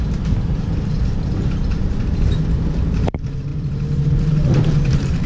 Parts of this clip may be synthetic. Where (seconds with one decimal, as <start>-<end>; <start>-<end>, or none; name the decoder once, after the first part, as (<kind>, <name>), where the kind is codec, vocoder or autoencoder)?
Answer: 0.0-5.3 (vocoder, BigVGAN v2)